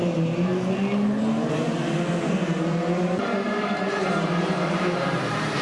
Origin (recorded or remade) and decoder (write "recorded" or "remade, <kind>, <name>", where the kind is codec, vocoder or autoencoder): remade, vocoder, BigVGAN v2